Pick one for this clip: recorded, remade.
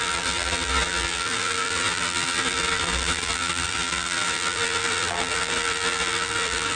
remade